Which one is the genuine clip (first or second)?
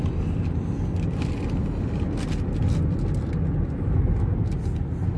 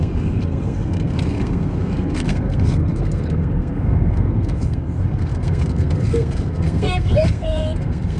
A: first